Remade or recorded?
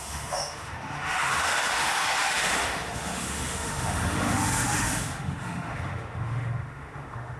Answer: remade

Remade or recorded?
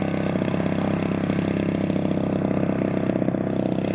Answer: recorded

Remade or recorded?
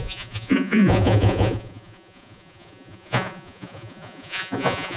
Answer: remade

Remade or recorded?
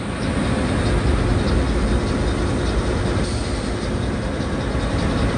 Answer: recorded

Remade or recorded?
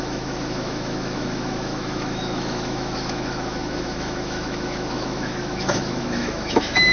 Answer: remade